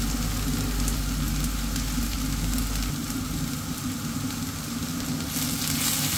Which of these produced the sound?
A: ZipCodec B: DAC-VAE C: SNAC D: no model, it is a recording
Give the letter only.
D